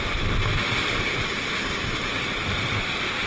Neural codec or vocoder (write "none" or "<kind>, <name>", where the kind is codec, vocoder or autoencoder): vocoder, BigVGAN v2